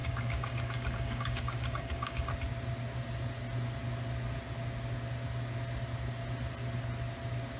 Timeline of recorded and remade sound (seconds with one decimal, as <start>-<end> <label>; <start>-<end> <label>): 0.0-2.3 remade; 2.3-7.6 recorded